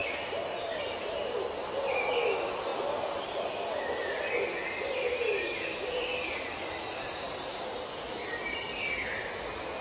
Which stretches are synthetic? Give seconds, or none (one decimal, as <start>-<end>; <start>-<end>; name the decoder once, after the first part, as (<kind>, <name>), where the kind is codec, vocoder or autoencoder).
0.0-1.1 (vocoder, BigVGAN v2); 2.7-7.6